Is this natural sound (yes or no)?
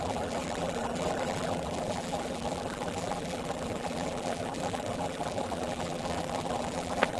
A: no